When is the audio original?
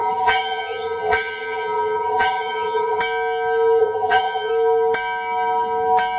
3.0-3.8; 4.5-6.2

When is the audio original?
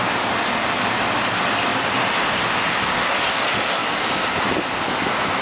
0.0-5.4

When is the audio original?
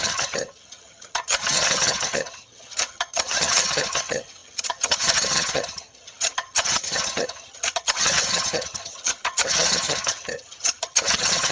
none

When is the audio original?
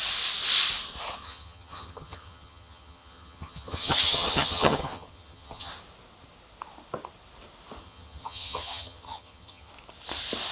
0.0-1.2; 5.7-7.8; 9.7-10.5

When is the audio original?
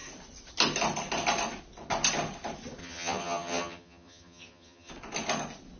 0.0-2.8; 4.9-5.8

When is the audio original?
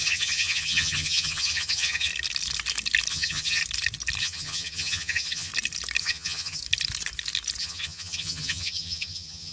2.1-3.1; 3.6-4.2; 5.5-6.0; 6.6-7.6